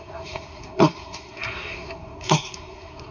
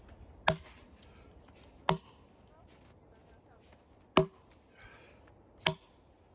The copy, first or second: first